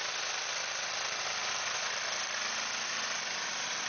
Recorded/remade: recorded